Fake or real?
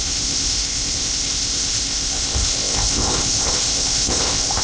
fake